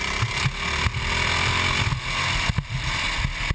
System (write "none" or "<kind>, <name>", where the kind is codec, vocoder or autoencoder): none